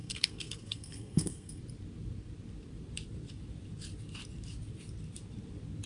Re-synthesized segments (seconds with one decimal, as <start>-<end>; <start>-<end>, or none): 0.0-1.6